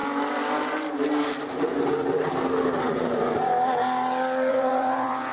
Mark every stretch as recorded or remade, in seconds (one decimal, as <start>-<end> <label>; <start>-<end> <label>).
0.0-2.9 recorded; 2.9-3.5 remade; 3.5-4.5 recorded; 4.5-5.3 remade